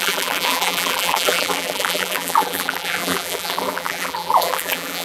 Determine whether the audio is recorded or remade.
remade